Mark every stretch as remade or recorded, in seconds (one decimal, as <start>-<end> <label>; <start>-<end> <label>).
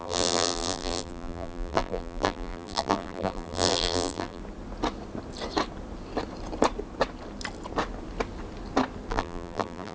0.0-4.4 remade; 4.4-9.1 recorded; 9.1-9.9 remade